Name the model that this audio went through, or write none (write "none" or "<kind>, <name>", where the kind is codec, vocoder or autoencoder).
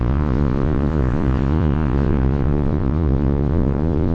vocoder, Vocos